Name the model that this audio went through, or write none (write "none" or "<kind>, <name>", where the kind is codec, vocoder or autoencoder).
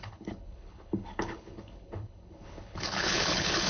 codec, HILCodec